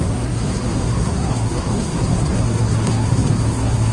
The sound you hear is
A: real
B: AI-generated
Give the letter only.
B